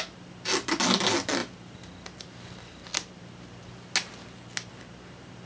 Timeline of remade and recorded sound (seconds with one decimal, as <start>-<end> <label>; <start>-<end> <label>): 0.0-5.5 recorded